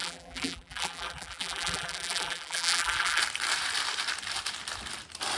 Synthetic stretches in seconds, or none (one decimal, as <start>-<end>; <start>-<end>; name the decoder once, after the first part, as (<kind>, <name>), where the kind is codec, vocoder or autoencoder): 0.0-3.2 (vocoder, BigVGAN v2)